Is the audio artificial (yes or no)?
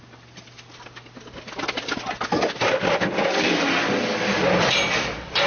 no